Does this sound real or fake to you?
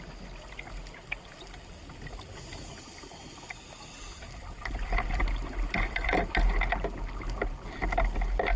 real